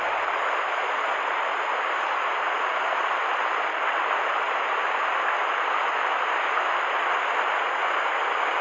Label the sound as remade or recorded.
recorded